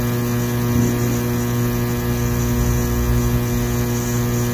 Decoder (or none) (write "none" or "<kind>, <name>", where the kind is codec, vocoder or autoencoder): none